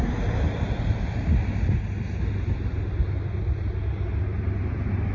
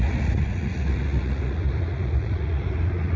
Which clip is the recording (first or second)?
first